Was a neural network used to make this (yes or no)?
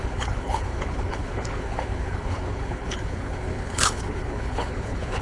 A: yes